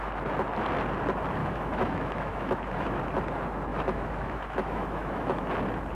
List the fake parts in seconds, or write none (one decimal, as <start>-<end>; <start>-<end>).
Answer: 1.4-3.0; 3.7-5.4

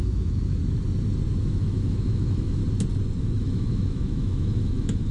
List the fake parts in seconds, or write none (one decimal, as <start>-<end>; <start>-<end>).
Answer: 0.0-0.6; 1.4-2.6; 3.2-5.1